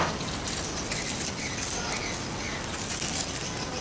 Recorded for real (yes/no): yes